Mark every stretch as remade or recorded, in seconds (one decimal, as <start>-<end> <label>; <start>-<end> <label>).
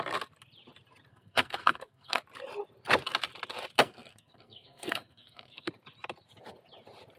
0.0-1.1 recorded; 1.1-2.2 remade; 2.2-3.8 recorded; 3.8-5.7 remade; 5.7-7.2 recorded